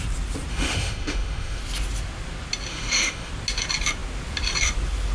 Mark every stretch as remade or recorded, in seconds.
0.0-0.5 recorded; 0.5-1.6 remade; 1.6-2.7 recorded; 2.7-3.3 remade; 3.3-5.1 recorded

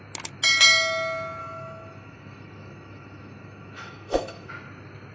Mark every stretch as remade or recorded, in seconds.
0.0-1.4 recorded; 1.4-4.5 remade; 4.5-5.1 recorded

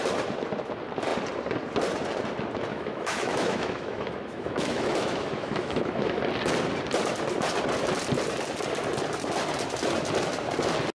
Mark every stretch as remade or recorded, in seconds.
0.0-2.7 recorded; 2.7-6.2 remade; 6.2-10.9 recorded

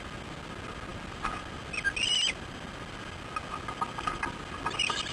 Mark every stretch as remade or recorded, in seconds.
0.0-5.1 recorded

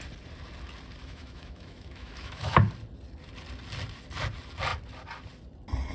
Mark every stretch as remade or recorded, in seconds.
0.0-1.0 recorded; 1.0-2.6 remade; 2.6-5.9 recorded

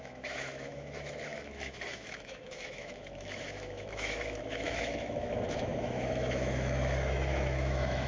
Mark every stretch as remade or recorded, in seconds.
0.0-8.1 remade

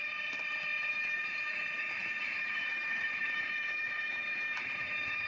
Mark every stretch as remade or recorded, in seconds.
0.0-0.9 recorded; 0.9-5.3 remade

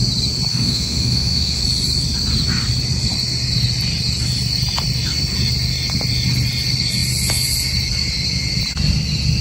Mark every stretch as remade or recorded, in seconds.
0.0-0.5 recorded; 0.5-1.6 remade; 1.6-9.4 recorded